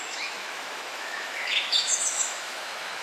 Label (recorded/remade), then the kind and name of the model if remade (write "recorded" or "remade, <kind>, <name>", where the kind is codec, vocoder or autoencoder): remade, autoencoder, DAC-VAE